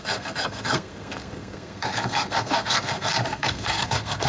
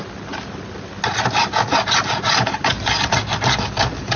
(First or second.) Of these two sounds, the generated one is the first